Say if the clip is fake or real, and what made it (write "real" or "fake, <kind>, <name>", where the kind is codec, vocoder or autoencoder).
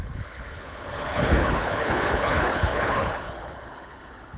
fake, codec, HILCodec